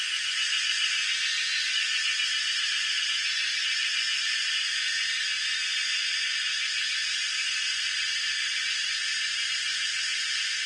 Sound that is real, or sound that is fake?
fake